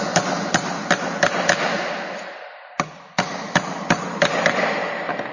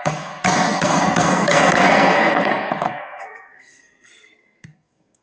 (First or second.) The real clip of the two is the first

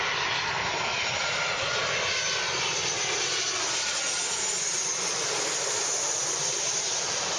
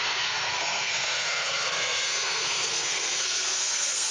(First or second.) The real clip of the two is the first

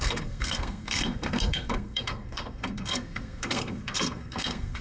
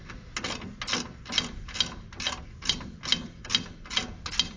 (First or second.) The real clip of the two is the second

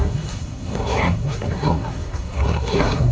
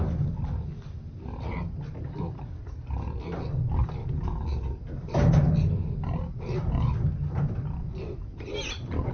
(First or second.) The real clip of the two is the second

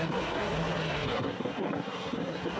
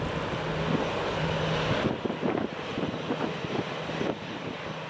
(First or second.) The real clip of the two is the second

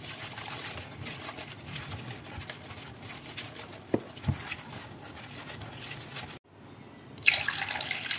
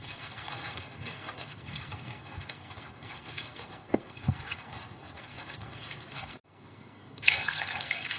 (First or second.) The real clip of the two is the first